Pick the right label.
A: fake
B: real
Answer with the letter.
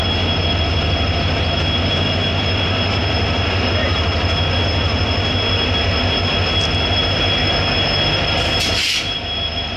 B